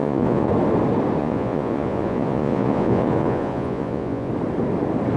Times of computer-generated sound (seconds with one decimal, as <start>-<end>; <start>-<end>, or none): 0.0-0.5; 1.2-4.3